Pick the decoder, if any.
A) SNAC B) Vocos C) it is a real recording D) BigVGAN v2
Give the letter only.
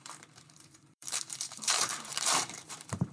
D